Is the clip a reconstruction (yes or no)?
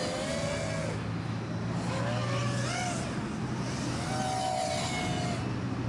no